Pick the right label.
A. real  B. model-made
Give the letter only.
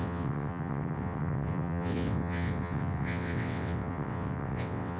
B